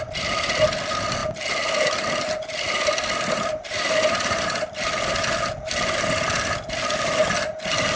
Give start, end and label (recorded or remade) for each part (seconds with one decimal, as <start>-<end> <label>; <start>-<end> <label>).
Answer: 0.0-1.2 recorded; 1.2-5.2 remade; 5.2-8.0 recorded